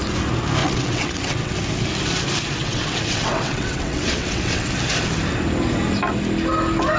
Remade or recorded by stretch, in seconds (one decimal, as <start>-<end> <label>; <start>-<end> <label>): 0.0-0.6 recorded; 0.6-1.5 remade; 1.5-2.6 recorded; 2.6-4.7 remade; 4.7-7.0 recorded